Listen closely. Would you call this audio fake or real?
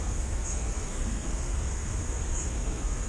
fake